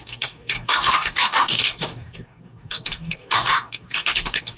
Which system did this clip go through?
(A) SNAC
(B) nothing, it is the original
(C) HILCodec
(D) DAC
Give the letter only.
D